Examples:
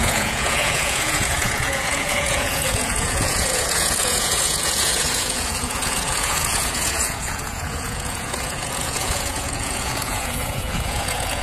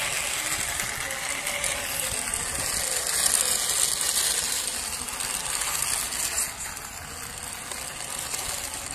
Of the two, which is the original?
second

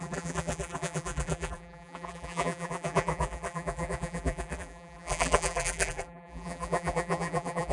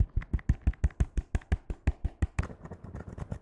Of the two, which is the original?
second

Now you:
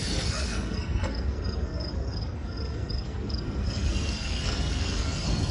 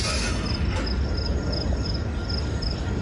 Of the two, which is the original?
second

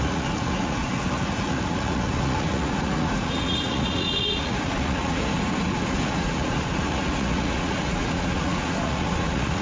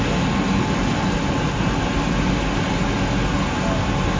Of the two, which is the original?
second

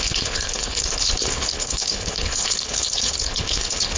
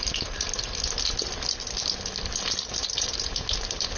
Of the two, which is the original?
second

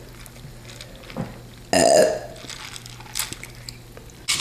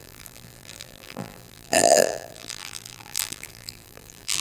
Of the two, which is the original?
first